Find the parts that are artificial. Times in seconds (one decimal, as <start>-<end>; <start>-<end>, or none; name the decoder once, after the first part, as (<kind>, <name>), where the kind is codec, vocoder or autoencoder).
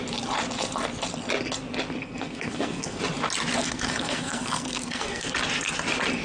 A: 2.0-3.0 (codec, SNAC); 3.6-5.3